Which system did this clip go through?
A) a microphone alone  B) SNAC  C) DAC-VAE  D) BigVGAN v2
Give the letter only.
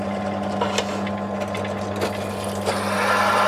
A